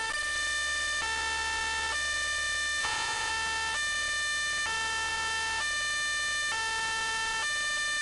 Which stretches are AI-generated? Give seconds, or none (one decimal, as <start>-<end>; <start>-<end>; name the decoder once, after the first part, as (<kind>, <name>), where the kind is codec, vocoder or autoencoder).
2.8-3.3 (vocoder, Vocos)